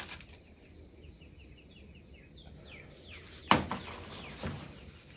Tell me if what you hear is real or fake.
real